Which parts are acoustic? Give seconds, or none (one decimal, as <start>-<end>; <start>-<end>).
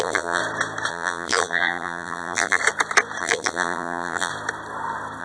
0.4-0.9; 2.6-3.2; 4.3-5.2